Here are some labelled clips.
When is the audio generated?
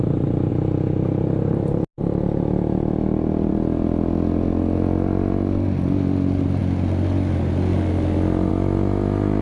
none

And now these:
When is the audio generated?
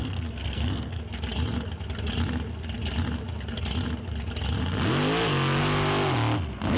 0.0-1.0 (codec, SNAC)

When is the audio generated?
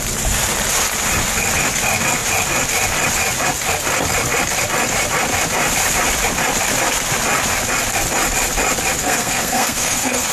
9.0-10.3 (codec, SNAC)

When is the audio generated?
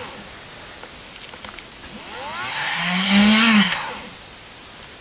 2.5-3.9 (codec, SNAC)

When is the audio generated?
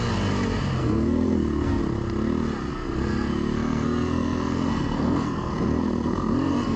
0.8-1.8 (codec, SNAC); 2.7-6.8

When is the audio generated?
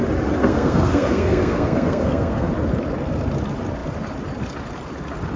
0.4-2.5 (codec, SNAC)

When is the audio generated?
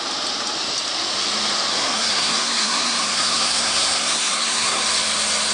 1.7-4.8 (codec, SNAC)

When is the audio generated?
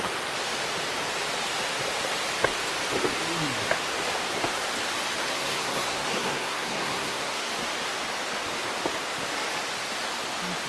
5.3-7.5 (codec, SNAC)